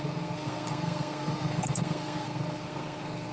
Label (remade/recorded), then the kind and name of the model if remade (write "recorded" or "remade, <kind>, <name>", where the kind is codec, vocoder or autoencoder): remade, codec, SNAC